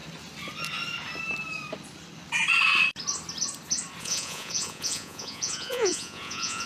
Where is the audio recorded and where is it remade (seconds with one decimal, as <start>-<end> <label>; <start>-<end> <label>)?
0.0-4.0 recorded; 4.0-6.7 remade